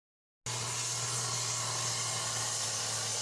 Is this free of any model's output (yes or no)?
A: yes